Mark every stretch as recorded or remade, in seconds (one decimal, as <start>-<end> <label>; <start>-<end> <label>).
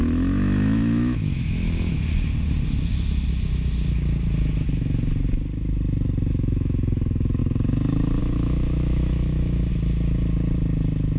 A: 0.0-2.0 remade; 2.0-6.3 recorded; 6.3-7.4 remade; 7.4-8.2 recorded; 8.2-9.7 remade; 9.7-11.2 recorded